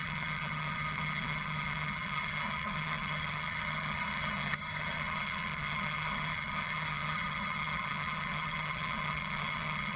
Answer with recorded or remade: remade